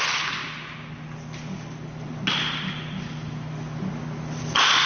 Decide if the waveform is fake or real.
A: real